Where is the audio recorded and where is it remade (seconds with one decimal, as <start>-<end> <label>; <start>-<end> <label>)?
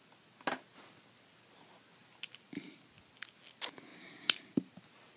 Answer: 0.0-2.0 recorded; 2.0-2.8 remade; 2.8-3.9 recorded; 3.9-4.8 remade; 4.8-5.2 recorded